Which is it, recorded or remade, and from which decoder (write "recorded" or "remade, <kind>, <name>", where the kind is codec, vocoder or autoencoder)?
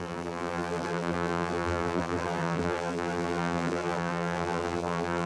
remade, vocoder, BigVGAN v2